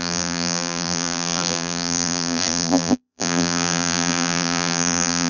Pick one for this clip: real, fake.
fake